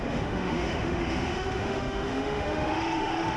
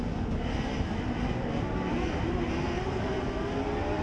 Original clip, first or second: second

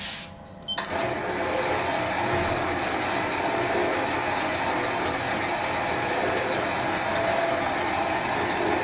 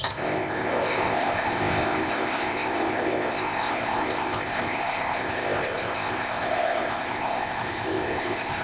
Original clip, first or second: first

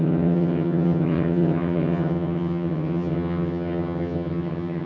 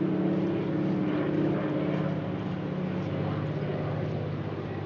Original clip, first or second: second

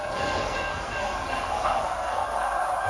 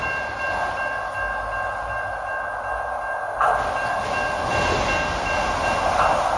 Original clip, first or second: second